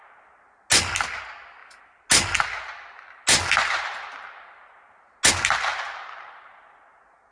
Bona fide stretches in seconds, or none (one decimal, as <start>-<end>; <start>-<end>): 0.0-7.3